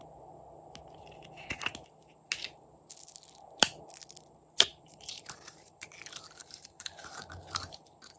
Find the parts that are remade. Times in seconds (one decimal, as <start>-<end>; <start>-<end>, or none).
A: 4.7-5.9; 6.4-7.3